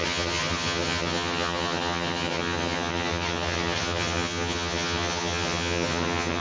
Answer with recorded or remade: remade